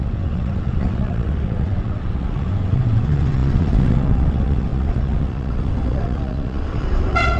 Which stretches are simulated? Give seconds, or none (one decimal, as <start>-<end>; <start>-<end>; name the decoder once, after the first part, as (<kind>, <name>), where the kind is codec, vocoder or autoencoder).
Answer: 0.0-7.4 (vocoder, WaveNeXt)